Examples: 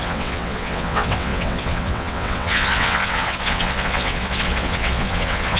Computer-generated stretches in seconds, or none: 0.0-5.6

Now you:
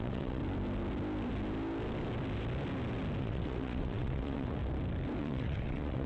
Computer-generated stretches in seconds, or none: 0.0-0.4; 3.2-4.6; 5.2-6.1

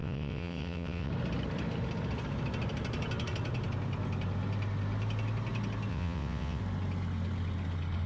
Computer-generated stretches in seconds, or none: 0.0-1.1; 5.9-6.6

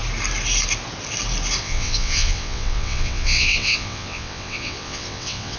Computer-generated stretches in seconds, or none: 1.6-5.6

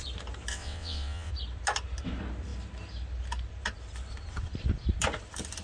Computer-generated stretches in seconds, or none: 0.5-1.3

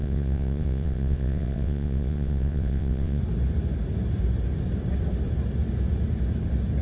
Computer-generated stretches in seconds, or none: 0.0-3.2

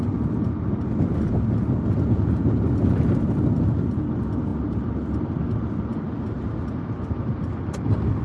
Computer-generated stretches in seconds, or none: none

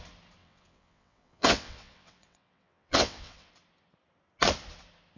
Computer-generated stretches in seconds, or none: 0.4-3.5